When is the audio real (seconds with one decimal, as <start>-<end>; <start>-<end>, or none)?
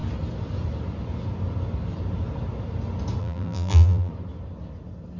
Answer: 0.0-3.2; 4.1-5.2